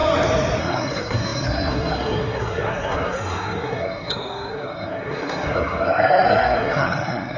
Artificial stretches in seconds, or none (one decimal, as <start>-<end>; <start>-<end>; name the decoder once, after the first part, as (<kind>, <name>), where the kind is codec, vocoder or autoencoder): 0.6-7.4 (codec, SNAC)